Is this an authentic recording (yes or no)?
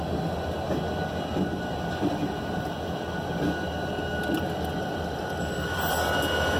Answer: yes